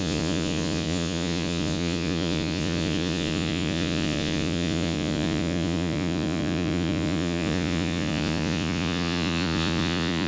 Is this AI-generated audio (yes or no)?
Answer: yes